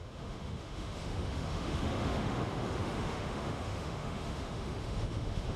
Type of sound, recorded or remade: remade